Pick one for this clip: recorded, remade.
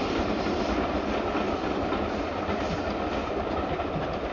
recorded